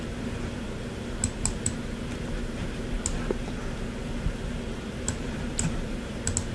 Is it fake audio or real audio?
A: real